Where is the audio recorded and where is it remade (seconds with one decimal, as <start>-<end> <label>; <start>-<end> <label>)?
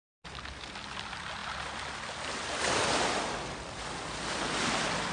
0.0-5.1 recorded